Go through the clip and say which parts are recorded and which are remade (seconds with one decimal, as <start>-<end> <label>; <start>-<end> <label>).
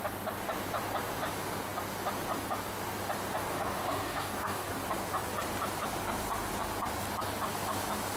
0.0-3.5 recorded; 3.5-4.7 remade; 4.7-8.2 recorded